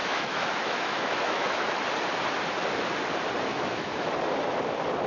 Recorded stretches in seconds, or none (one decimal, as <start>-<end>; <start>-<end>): 1.8-3.5; 4.1-5.1